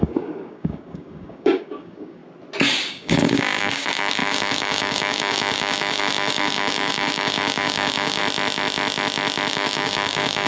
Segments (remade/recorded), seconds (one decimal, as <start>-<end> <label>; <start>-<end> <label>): 0.0-2.2 remade; 2.2-2.9 recorded; 2.9-8.2 remade; 8.2-9.5 recorded; 9.5-10.5 remade